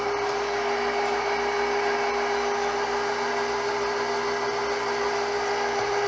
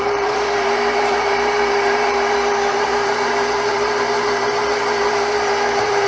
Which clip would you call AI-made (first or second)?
second